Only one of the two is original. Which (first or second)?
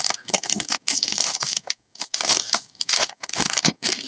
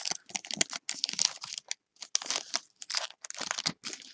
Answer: second